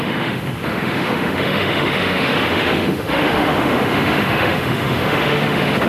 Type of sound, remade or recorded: remade